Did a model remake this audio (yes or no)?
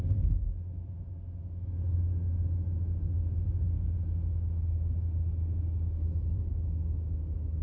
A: no